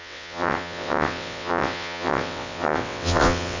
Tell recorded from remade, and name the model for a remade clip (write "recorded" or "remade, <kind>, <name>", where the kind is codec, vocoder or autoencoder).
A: remade, vocoder, WaveNeXt